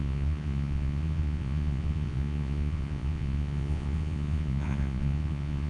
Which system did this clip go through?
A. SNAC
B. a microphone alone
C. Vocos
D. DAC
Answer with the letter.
C